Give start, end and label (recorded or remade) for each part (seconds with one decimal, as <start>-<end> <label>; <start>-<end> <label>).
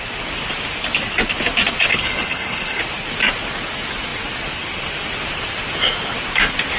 0.0-1.9 recorded; 1.9-2.8 remade; 2.8-6.8 recorded